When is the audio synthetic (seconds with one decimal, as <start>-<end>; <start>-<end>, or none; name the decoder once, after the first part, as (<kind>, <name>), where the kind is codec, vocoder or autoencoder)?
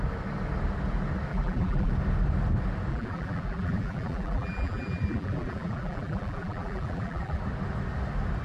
1.3-1.9 (vocoder, BigVGAN v2); 2.9-7.4